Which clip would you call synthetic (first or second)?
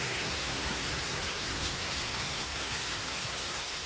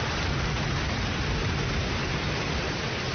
first